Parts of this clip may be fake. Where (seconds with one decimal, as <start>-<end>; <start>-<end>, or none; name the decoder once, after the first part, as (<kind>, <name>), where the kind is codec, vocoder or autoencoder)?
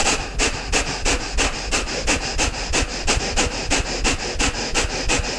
none